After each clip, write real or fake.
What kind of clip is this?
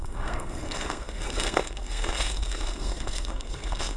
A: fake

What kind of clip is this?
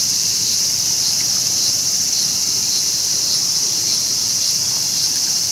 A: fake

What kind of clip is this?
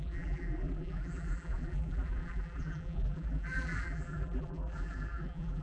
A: fake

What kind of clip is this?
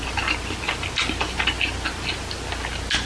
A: real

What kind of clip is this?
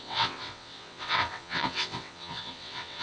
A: fake